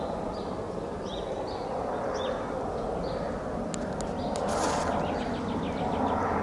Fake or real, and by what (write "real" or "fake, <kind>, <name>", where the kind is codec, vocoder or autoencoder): real